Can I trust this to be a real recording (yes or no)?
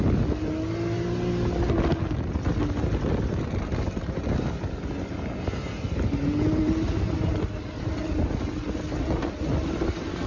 yes